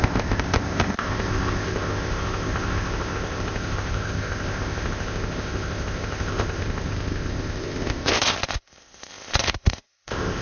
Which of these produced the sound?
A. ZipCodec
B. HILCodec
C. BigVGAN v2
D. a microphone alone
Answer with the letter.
A